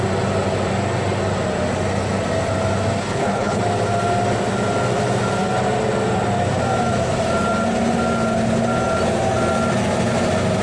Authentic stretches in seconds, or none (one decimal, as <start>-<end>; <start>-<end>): 0.0-3.0; 3.6-10.6